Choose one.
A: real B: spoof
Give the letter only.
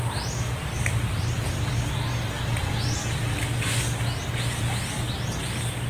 A